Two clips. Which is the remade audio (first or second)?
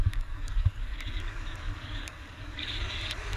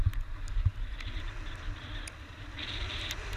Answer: first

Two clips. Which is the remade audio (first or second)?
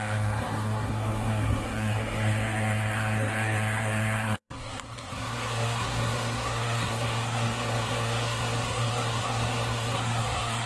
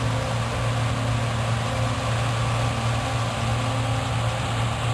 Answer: first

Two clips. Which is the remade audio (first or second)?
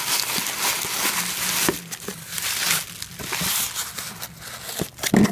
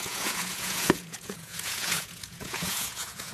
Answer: second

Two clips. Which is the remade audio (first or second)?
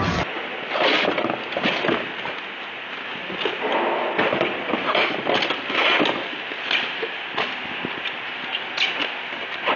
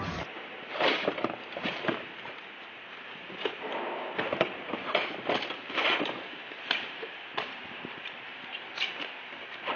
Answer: second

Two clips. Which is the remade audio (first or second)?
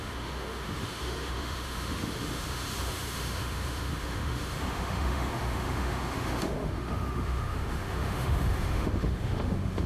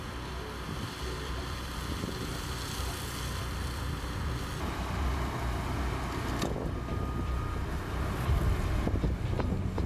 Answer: first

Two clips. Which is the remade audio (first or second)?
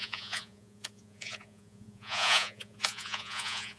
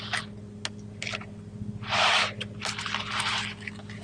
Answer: first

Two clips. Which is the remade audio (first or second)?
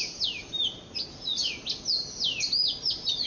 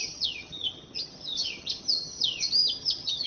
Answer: second